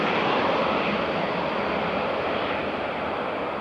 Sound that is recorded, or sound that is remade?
recorded